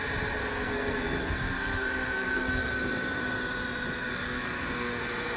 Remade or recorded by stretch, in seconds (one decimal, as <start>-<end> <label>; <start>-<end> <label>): 0.0-0.5 recorded; 0.5-2.7 remade; 2.7-4.0 recorded; 4.0-5.0 remade; 5.0-5.4 recorded